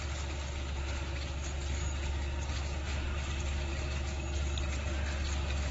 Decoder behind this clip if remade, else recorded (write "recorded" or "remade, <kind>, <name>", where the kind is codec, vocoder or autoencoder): recorded